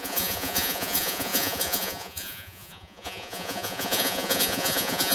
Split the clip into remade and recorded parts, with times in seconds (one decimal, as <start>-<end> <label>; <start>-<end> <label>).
0.0-5.1 remade